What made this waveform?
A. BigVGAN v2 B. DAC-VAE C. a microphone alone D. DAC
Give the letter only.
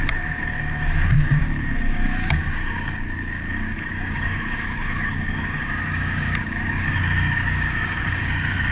D